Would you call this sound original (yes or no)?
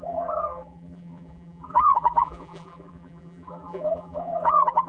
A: no